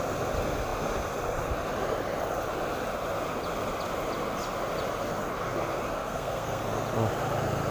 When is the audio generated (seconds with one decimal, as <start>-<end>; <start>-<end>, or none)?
6.0-6.6